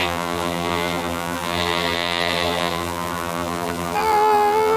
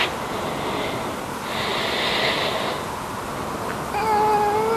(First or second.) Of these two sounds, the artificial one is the first